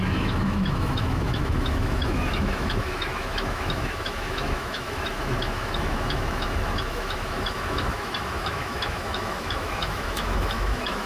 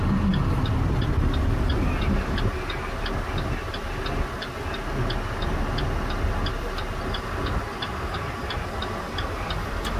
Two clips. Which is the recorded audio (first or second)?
second